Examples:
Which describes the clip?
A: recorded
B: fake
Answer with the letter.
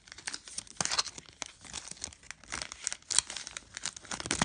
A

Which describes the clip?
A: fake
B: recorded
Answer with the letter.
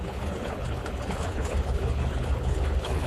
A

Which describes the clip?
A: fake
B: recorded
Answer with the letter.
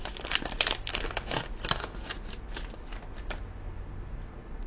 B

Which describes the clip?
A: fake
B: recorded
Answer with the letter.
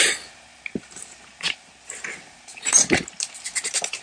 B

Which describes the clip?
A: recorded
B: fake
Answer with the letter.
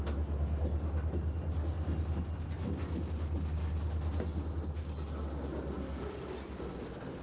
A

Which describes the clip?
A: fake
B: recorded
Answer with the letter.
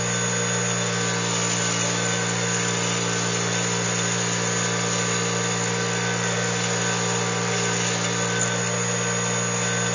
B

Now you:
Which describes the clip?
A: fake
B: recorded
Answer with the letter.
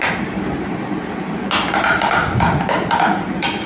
B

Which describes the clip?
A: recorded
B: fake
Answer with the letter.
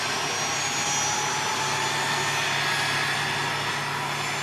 A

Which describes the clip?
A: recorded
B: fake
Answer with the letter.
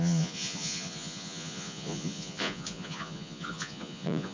B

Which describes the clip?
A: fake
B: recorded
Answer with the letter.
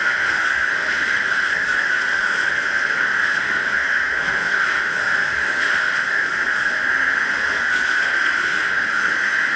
A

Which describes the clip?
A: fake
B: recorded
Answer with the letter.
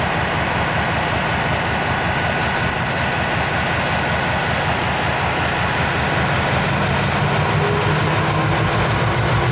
B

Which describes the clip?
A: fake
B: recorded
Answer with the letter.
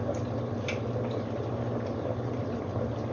B